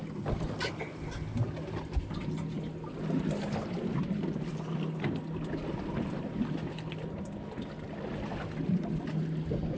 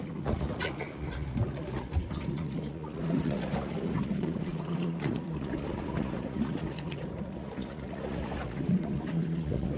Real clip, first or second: first